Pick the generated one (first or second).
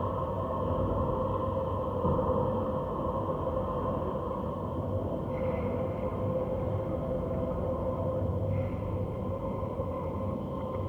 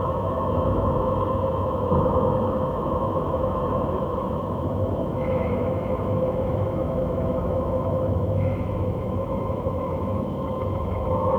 second